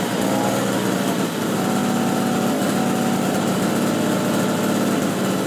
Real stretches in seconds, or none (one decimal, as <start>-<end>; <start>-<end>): 0.0-5.5